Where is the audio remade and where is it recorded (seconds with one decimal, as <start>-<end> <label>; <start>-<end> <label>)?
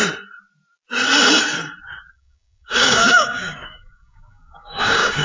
0.0-2.1 recorded; 2.1-5.2 remade